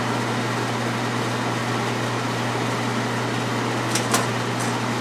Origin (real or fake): real